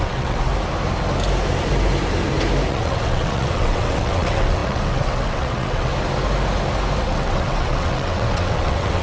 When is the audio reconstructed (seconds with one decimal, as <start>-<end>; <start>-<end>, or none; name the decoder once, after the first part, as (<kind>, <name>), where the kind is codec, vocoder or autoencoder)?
0.0-0.5 (vocoder, WaveNeXt); 2.7-5.9; 7.0-9.0